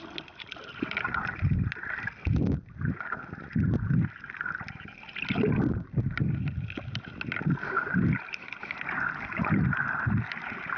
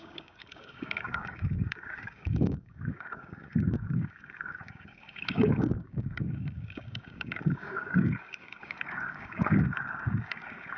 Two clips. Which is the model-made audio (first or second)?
second